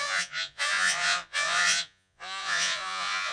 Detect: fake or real fake